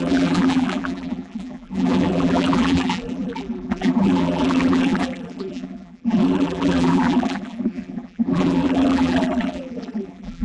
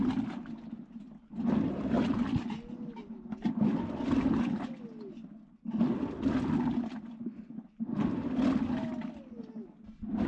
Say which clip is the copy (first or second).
first